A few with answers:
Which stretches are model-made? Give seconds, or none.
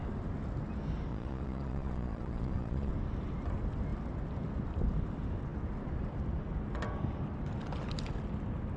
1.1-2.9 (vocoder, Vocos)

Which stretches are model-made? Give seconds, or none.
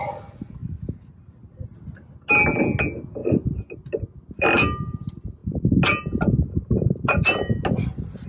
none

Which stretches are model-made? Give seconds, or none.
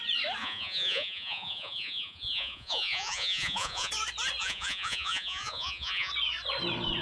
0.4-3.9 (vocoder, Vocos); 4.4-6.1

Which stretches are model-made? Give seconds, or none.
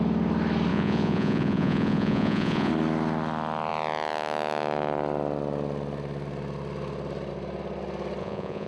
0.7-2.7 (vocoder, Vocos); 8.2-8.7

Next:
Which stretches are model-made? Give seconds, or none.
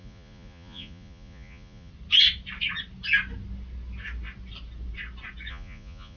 0.0-1.9 (vocoder, Vocos); 5.5-6.2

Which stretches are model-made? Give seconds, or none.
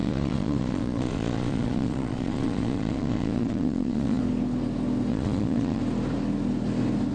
0.0-4.2 (vocoder, Vocos); 5.1-5.8